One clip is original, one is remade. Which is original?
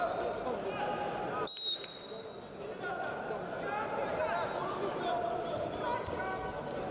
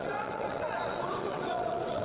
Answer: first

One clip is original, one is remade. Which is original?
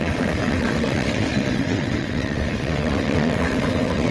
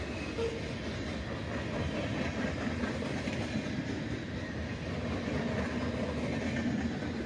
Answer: second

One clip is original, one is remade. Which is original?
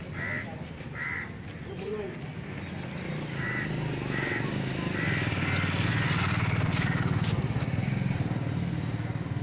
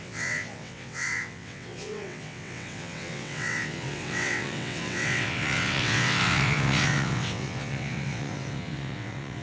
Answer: first